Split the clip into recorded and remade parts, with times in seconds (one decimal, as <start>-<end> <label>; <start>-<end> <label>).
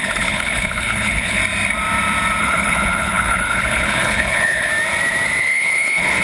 0.0-1.4 remade; 1.4-2.4 recorded; 2.4-4.7 remade; 4.7-5.4 recorded; 5.4-6.2 remade